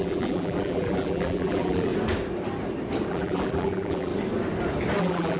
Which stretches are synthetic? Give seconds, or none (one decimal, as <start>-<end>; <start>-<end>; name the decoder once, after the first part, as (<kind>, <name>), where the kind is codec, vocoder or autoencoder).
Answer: 0.0-1.9 (vocoder, BigVGAN v2); 3.1-4.1; 5.0-5.4